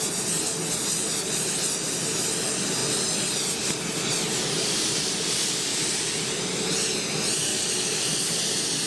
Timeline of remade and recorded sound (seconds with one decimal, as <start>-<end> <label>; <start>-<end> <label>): 0.0-7.5 recorded; 7.5-8.4 remade; 8.4-8.9 recorded